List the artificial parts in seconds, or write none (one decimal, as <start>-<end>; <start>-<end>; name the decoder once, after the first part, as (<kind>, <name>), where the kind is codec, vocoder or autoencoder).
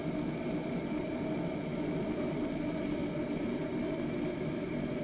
1.7-5.0 (vocoder, BigVGAN v2)